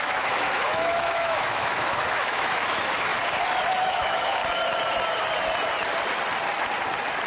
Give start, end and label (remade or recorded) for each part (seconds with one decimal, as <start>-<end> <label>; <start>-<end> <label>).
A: 0.0-3.1 remade; 3.1-3.8 recorded; 3.8-4.4 remade; 4.4-7.3 recorded